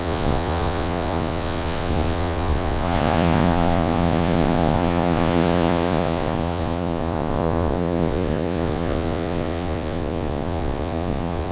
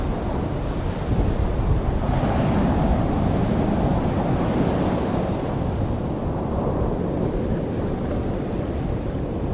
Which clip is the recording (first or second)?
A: second